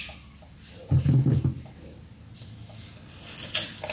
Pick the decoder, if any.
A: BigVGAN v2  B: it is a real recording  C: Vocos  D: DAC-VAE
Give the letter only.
B